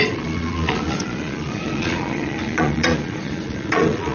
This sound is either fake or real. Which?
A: fake